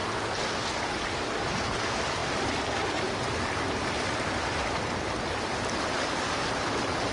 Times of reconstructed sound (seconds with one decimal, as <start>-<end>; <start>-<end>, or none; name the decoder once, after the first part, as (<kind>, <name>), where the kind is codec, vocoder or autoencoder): none